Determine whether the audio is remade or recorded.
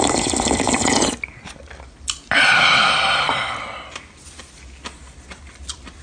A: recorded